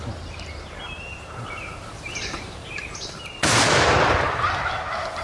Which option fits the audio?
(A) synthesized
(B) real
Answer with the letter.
A